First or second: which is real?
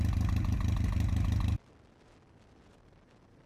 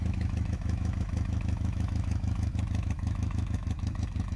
first